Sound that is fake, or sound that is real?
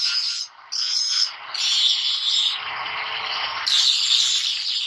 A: real